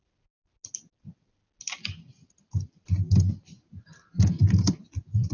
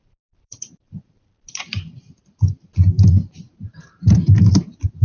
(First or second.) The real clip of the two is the first